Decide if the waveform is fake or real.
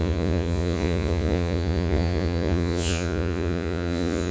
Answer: fake